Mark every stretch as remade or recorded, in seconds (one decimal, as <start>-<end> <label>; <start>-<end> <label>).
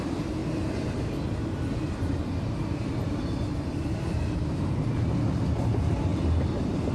0.0-6.9 recorded